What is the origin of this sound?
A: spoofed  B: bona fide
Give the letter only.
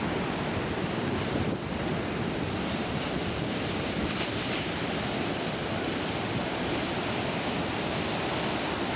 A